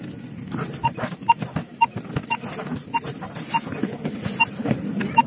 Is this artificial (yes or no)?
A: no